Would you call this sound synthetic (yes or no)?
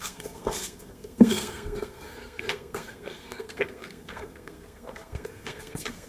yes